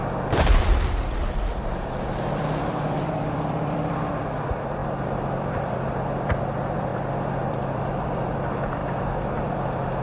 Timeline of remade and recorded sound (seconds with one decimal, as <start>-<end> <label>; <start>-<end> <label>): 0.0-2.3 recorded; 2.3-10.0 remade